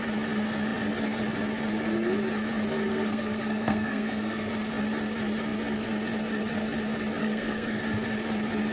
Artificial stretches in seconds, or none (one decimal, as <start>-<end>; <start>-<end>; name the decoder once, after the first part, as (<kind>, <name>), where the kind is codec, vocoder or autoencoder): 2.9-4.5 (codec, SNAC); 7.2-7.8